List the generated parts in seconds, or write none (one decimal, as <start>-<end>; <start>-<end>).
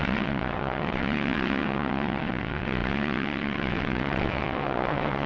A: 0.0-5.3